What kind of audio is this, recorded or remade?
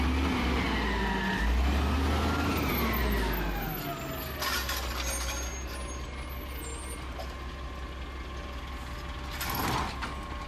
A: recorded